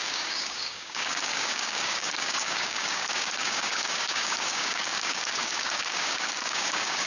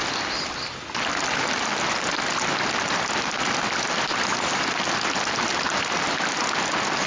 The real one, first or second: second